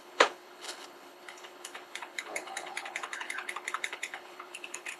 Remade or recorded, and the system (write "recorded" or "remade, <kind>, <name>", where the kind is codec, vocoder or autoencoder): remade, codec, HILCodec